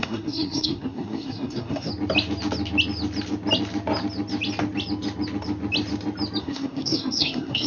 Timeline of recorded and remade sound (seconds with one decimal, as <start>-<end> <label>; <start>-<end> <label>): 0.0-1.9 remade; 1.9-6.4 recorded; 6.4-7.7 remade

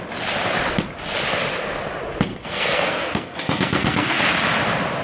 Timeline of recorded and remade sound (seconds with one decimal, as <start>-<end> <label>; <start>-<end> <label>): 0.0-2.3 recorded; 2.3-4.2 remade; 4.2-5.0 recorded

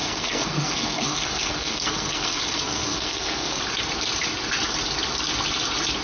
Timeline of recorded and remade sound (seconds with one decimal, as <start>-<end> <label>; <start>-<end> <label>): 0.0-3.6 remade; 3.6-6.0 recorded

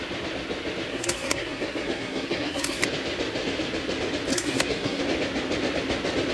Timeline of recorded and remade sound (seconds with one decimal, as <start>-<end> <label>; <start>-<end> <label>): 0.0-0.9 recorded; 0.9-2.8 remade; 2.8-4.3 recorded; 4.3-5.0 remade; 5.0-6.3 recorded

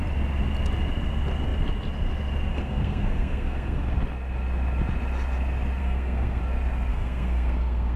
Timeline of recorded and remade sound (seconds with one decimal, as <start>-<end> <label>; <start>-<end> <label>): 0.0-2.5 recorded; 2.5-3.9 remade; 3.9-5.8 recorded; 5.8-6.4 remade; 6.4-6.9 recorded; 6.9-8.0 remade

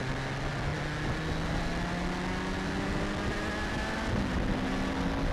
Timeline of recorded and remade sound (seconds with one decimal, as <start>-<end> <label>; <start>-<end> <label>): 0.0-5.3 recorded

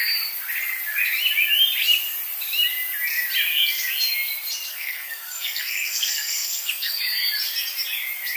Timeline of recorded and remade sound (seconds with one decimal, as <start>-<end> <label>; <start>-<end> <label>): 0.0-4.7 recorded; 4.7-7.0 remade; 7.0-8.4 recorded

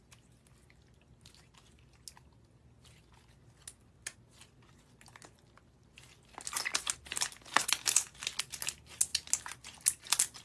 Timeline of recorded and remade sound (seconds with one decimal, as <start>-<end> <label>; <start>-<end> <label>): 0.0-10.4 recorded